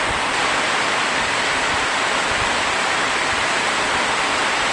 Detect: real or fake real